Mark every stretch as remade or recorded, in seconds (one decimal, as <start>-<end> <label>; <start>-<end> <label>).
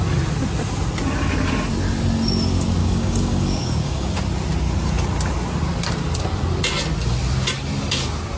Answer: 0.0-2.8 recorded; 2.8-4.1 remade; 4.1-8.4 recorded